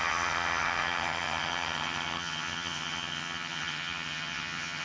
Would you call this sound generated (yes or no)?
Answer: yes